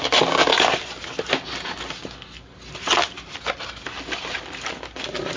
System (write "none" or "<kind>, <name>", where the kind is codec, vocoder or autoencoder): none